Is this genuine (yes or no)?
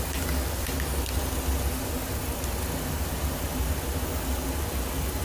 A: yes